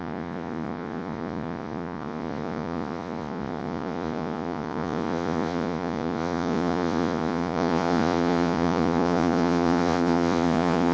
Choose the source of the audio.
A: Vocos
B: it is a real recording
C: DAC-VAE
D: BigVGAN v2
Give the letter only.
A